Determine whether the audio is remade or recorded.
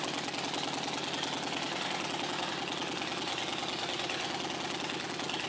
recorded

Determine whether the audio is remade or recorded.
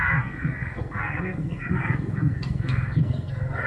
remade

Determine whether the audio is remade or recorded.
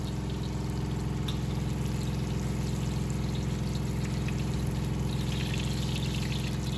recorded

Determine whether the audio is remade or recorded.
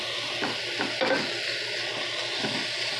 recorded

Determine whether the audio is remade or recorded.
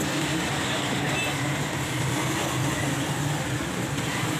recorded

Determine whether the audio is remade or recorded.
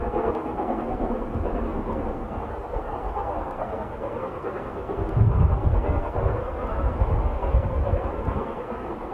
remade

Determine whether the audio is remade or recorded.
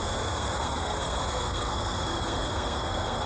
remade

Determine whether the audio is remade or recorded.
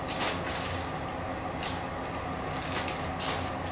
recorded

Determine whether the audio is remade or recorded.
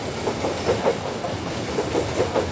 recorded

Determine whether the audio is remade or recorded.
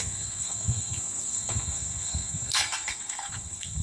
remade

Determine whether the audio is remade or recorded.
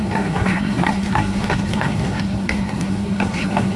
remade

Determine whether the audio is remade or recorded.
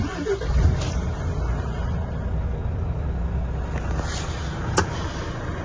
recorded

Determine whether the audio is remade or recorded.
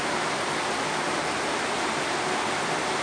recorded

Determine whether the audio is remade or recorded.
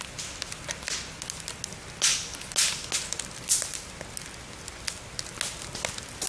recorded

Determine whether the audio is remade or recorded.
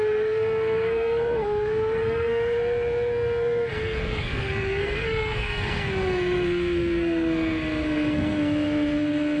remade